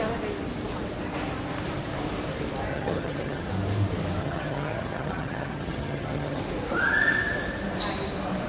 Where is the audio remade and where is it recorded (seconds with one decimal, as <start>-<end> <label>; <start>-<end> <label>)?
0.0-2.7 recorded; 2.7-3.5 remade; 3.5-4.2 recorded; 4.2-6.4 remade; 6.4-8.5 recorded